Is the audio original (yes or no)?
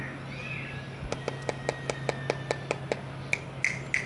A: yes